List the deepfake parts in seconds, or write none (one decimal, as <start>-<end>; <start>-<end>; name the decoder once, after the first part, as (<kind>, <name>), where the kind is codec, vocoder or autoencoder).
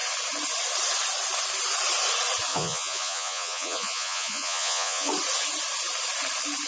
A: 2.5-5.1 (vocoder, Vocos)